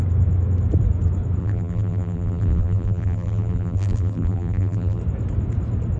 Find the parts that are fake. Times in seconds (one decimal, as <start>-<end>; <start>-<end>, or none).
1.4-5.0